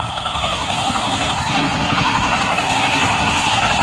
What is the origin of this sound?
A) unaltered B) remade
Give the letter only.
B